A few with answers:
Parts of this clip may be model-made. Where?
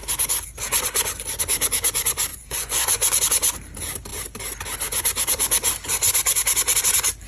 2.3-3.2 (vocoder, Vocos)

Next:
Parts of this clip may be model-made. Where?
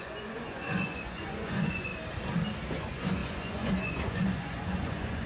0.0-1.9 (vocoder, Vocos); 2.7-5.3